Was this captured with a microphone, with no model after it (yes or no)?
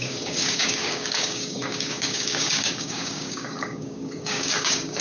no